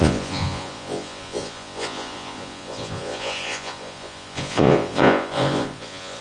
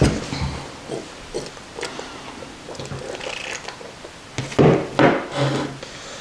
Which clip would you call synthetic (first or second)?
first